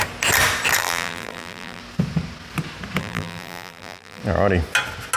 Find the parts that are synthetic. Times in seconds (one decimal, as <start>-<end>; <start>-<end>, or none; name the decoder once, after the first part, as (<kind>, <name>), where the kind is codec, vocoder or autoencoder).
0.8-1.8 (vocoder, BigVGAN v2); 3.0-4.2